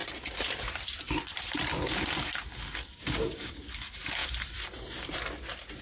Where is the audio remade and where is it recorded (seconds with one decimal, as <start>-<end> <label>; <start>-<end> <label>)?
0.0-5.8 recorded